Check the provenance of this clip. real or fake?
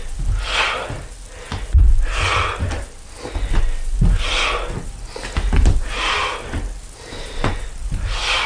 real